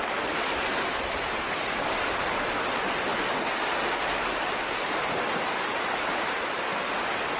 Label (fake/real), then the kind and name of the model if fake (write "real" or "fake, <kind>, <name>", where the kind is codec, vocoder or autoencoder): real